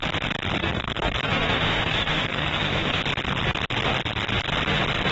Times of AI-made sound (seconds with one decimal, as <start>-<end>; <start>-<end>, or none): 0.6-3.0